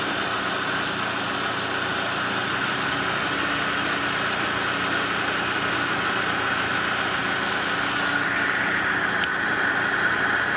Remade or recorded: recorded